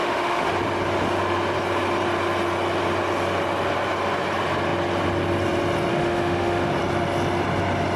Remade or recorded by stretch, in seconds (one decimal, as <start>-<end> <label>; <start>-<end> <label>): 0.0-0.5 remade; 0.5-5.9 recorded; 5.9-6.7 remade; 6.7-8.0 recorded